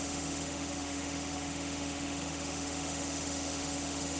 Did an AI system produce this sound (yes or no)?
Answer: yes